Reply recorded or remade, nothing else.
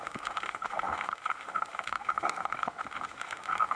remade